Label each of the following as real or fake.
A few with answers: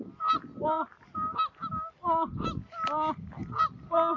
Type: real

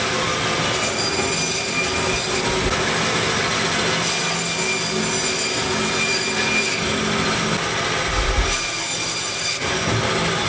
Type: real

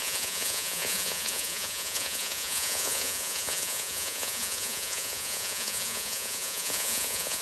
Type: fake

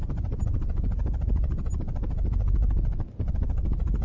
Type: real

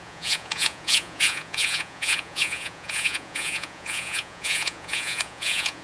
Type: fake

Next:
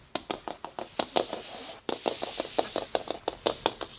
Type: real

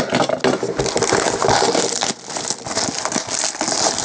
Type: real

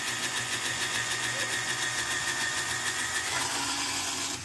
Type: fake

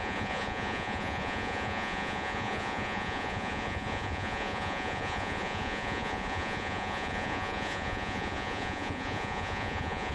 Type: fake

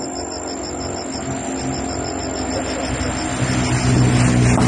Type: real